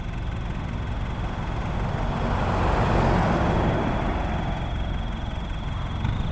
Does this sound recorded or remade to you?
recorded